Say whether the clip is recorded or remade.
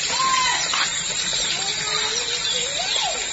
recorded